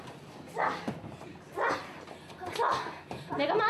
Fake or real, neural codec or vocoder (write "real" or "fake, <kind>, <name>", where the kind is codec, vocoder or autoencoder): real